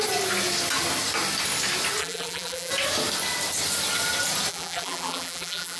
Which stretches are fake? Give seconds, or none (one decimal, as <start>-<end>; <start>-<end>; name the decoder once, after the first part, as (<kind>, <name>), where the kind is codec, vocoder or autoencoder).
2.0-2.7 (vocoder, BigVGAN v2); 4.5-5.8